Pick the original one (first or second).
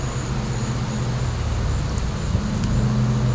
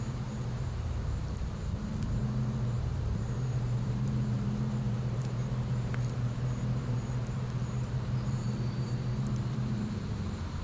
first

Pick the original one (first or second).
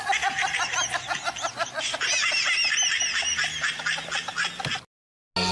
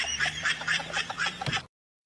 first